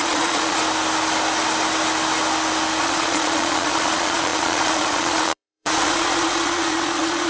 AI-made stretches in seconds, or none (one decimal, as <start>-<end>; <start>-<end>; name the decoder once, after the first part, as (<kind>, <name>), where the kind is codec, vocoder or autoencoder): 0.0-0.6 (vocoder, Vocos); 2.8-7.3